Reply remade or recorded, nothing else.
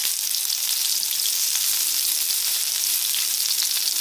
recorded